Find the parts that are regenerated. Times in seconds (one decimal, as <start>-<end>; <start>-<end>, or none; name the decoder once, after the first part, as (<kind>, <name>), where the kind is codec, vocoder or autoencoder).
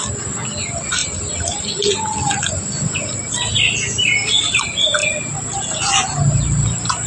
1.0-1.7 (vocoder, BigVGAN v2)